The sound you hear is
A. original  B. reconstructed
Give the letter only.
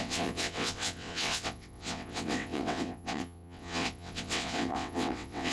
B